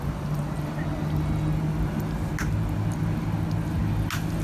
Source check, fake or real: real